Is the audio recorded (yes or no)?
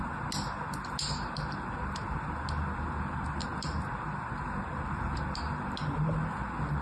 yes